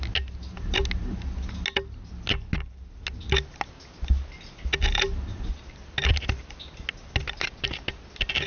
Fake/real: real